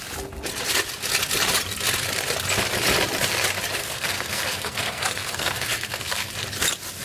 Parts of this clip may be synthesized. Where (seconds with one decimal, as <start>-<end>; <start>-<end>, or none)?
3.8-6.3